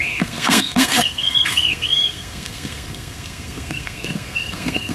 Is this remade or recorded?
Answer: remade